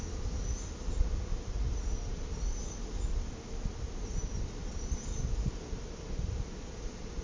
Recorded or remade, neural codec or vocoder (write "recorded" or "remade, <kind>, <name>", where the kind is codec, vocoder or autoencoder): recorded